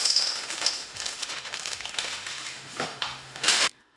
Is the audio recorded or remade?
remade